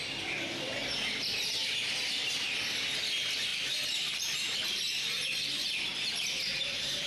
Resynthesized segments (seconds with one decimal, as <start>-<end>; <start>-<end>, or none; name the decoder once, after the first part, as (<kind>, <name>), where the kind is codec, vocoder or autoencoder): 3.5-7.1 (vocoder, BigVGAN v2)

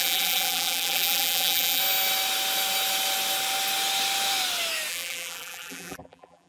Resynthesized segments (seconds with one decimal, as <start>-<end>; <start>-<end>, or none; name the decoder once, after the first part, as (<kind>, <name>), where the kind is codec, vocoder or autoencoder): 0.0-1.8 (vocoder, BigVGAN v2); 4.9-6.5

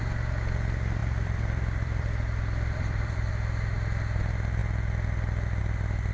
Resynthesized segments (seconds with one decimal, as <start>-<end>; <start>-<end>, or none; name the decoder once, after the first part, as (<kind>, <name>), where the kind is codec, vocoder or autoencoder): 1.0-3.3 (vocoder, BigVGAN v2)

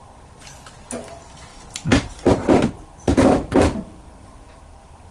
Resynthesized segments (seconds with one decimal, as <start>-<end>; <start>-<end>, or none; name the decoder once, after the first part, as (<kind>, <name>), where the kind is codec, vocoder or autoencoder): 1.5-4.6 (vocoder, BigVGAN v2)